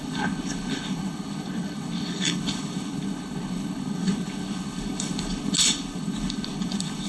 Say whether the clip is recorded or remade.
remade